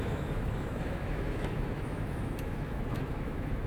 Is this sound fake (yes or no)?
yes